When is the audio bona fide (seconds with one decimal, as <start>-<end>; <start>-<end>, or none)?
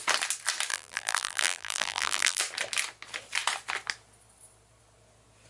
0.0-0.7; 2.4-5.5